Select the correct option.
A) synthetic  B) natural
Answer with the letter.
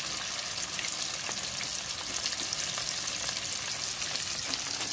B